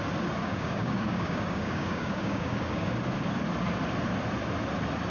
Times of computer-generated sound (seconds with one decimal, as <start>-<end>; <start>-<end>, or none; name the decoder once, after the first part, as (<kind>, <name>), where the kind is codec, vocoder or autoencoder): 0.4-2.9 (codec, DAC)